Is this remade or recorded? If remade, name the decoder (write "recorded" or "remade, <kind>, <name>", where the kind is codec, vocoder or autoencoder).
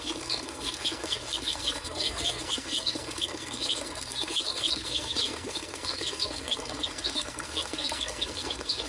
remade, codec, SNAC